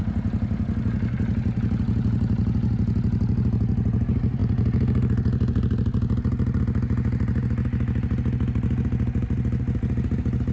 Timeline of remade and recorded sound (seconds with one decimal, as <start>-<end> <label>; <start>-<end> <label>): 0.0-10.5 recorded